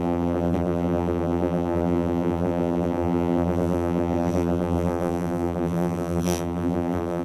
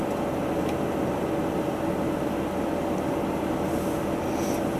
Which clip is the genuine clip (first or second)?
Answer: second